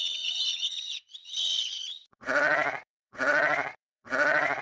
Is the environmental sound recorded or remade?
remade